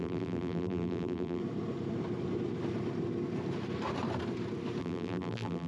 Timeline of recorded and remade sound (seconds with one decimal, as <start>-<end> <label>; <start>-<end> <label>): 0.0-1.4 remade; 1.4-4.8 recorded; 4.8-5.7 remade